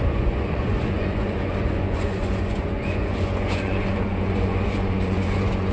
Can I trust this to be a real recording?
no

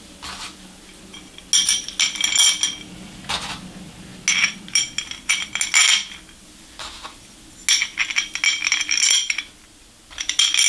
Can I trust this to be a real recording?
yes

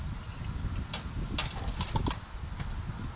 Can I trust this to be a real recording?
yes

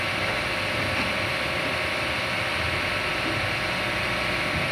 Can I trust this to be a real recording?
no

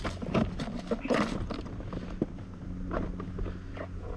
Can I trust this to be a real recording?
yes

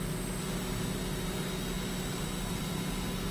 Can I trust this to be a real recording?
yes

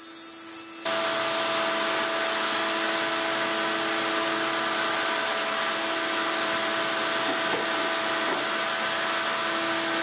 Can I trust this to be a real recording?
yes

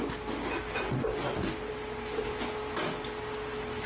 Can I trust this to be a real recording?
yes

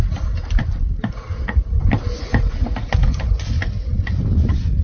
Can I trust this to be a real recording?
yes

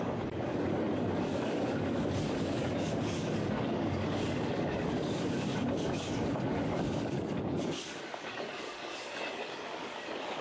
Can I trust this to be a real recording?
no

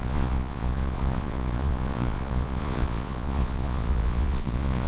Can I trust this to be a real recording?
no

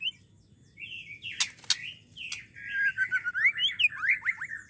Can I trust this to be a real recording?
yes